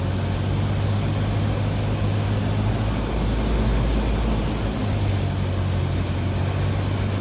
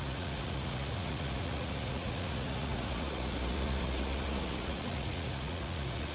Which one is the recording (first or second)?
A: first